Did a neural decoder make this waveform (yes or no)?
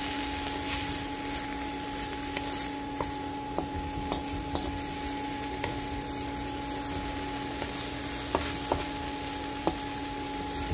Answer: no